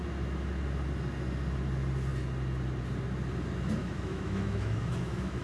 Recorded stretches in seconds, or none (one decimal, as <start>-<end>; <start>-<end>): 0.0-3.8